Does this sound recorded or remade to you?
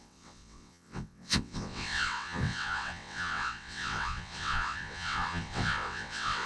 remade